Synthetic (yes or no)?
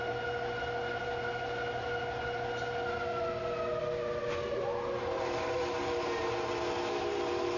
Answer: no